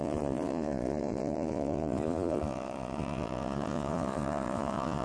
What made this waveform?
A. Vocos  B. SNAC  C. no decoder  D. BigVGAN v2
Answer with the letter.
A